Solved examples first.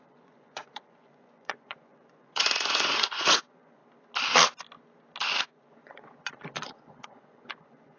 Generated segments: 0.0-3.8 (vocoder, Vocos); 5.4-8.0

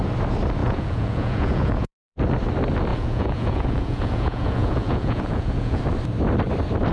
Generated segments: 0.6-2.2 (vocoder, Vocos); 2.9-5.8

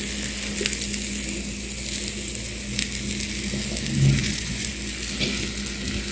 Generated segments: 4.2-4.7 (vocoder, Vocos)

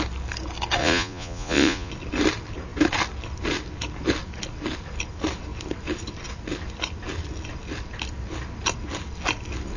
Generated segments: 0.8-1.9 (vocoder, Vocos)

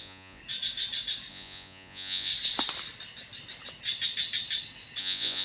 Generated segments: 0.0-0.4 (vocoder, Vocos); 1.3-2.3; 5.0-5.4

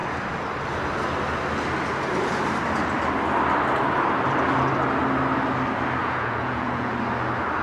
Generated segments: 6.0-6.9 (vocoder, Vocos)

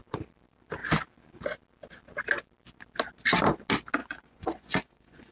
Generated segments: 4.0-5.3 (vocoder, Vocos)

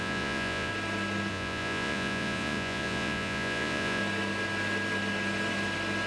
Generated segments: 0.0-0.7 (vocoder, Vocos); 1.3-4.0